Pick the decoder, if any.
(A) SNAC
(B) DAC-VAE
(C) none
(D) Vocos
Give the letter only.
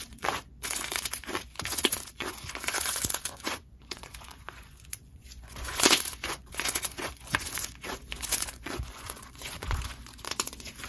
D